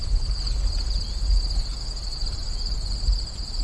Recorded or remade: recorded